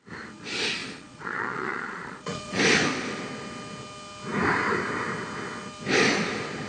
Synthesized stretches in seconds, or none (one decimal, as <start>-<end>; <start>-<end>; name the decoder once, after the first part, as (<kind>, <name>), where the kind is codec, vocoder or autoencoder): 0.8-2.6 (vocoder, Vocos)